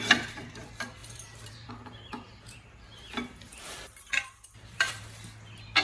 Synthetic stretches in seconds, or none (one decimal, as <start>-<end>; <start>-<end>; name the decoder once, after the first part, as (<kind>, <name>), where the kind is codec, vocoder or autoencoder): 1.0-1.7 (vocoder, BigVGAN v2); 3.5-5.0